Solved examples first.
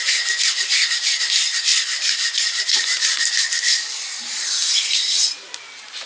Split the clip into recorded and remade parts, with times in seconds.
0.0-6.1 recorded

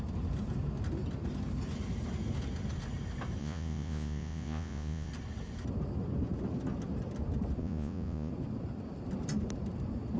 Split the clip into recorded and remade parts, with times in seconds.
0.0-3.4 recorded; 3.4-5.1 remade; 5.1-7.6 recorded; 7.6-8.3 remade; 8.3-10.2 recorded